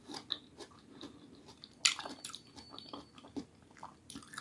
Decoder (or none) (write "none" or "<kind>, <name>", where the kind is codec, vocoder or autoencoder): none